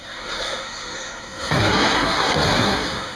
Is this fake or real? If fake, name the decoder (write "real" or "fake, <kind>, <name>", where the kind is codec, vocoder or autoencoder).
fake, codec, SNAC